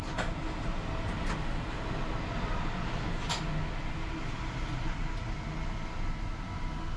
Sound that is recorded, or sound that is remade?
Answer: recorded